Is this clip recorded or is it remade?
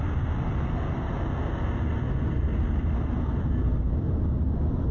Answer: recorded